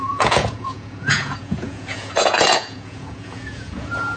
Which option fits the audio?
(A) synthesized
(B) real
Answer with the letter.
A